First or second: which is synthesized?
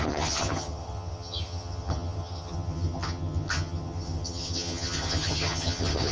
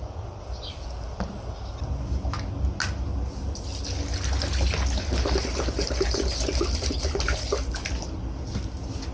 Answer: first